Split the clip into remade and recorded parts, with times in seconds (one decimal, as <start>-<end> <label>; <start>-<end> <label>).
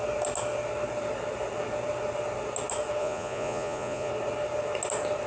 0.0-3.0 recorded; 3.0-4.1 remade; 4.1-5.3 recorded